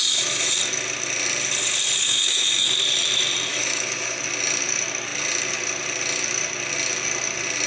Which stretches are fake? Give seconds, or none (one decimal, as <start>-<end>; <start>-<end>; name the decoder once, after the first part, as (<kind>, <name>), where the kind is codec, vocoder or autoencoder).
0.0-0.5 (autoencoder, DAC-VAE); 2.0-2.7; 3.5-4.2